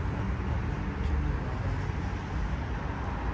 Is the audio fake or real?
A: real